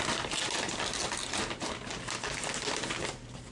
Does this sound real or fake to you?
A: real